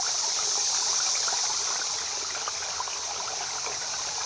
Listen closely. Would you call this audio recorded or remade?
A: recorded